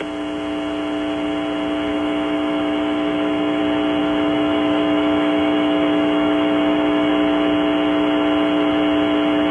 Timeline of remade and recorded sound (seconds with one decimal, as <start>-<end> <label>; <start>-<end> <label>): 0.0-1.9 recorded; 1.9-3.6 remade; 3.6-4.0 recorded; 4.0-7.1 remade; 7.1-9.5 recorded